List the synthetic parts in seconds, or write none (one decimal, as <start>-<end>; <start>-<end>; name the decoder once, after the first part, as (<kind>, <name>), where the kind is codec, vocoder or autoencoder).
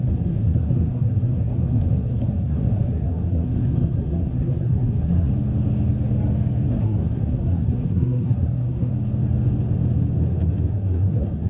0.0-5.3 (codec, SNAC); 6.7-8.9; 10.7-11.5